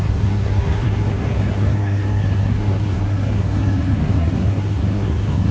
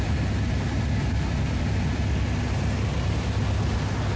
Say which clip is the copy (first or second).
first